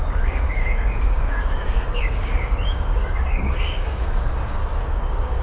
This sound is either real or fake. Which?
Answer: fake